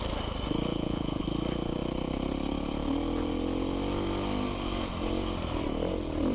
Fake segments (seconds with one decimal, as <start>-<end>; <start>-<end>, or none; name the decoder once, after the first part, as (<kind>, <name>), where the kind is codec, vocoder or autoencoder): 0.7-1.2 (vocoder, Vocos)